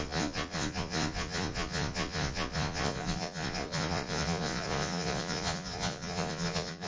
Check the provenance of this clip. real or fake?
fake